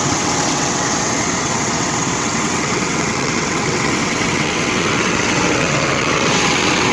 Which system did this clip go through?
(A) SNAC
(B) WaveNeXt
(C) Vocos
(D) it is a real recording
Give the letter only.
B